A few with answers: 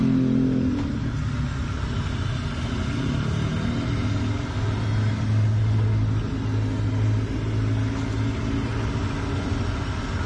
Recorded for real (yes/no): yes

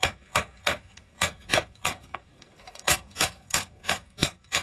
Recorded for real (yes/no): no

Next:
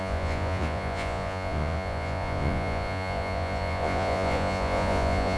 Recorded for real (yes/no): no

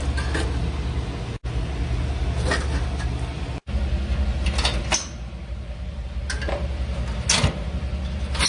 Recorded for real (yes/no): yes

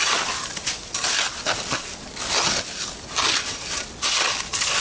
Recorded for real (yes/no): yes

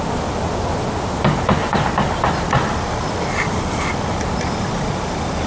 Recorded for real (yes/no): yes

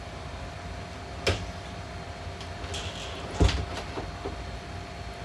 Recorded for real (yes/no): yes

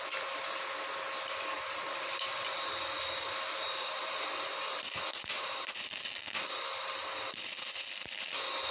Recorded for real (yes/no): no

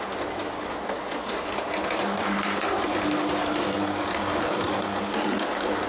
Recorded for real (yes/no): yes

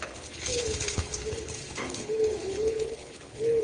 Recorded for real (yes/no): no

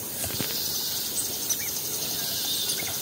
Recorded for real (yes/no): yes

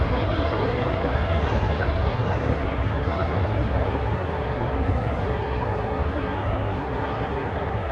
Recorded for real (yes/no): no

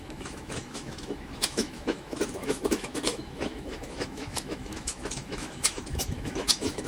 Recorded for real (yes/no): no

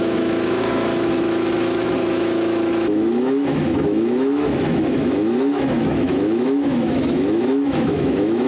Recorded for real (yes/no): no